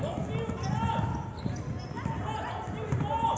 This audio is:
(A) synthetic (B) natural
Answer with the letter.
B